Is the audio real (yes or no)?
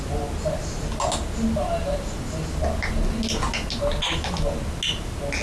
yes